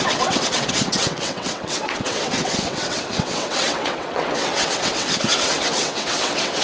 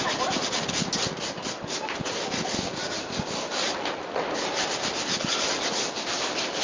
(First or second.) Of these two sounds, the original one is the second